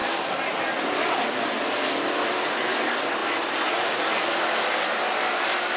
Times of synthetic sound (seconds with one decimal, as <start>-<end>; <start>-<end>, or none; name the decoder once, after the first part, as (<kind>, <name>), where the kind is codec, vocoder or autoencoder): 3.2-4.1 (vocoder, BigVGAN v2)